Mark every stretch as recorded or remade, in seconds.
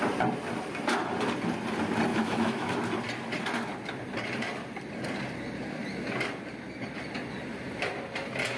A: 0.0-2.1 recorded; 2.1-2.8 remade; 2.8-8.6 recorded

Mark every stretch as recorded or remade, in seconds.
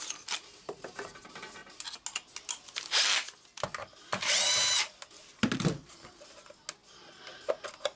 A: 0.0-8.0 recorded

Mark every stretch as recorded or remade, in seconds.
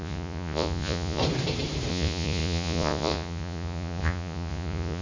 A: 0.0-1.2 remade; 1.2-1.9 recorded; 1.9-5.0 remade